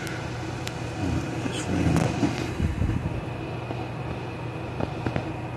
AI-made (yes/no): no